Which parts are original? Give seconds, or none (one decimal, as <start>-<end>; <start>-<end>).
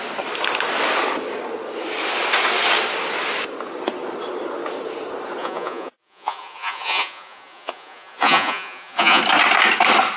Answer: 0.0-5.4; 9.2-10.2